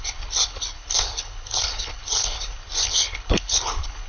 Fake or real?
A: fake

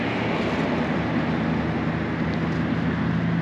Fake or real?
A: real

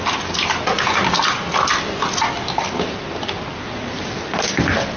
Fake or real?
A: real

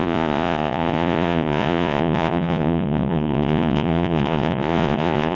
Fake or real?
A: fake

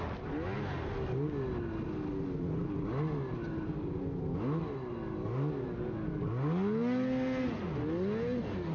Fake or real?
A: real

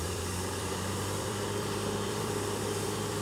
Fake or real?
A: fake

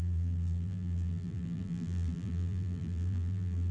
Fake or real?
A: fake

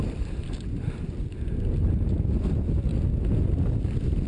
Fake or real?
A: real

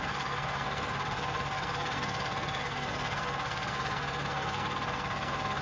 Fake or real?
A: fake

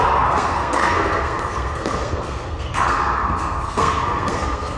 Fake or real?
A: fake